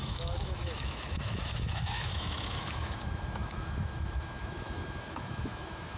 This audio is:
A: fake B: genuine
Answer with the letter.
A